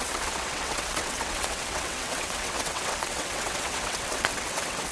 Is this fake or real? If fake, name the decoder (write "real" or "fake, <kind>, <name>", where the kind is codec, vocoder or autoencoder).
fake, vocoder, WaveNeXt